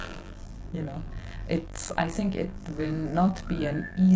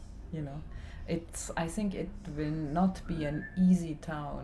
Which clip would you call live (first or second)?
second